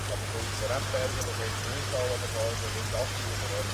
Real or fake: real